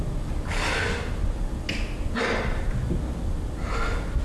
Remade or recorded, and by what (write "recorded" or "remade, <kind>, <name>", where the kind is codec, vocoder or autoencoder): recorded